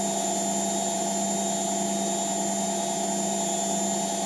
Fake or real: real